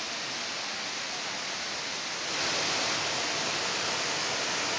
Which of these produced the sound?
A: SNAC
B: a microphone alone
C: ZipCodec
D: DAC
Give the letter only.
B